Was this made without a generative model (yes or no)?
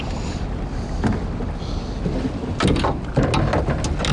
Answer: yes